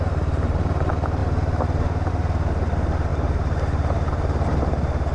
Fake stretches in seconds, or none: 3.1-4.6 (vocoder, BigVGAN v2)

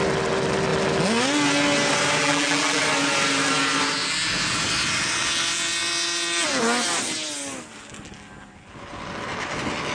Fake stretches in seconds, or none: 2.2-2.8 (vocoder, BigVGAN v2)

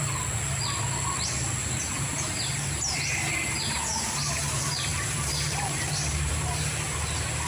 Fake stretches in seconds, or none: 1.6-3.1 (vocoder, BigVGAN v2); 4.9-6.3